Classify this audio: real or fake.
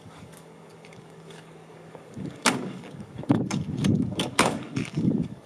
fake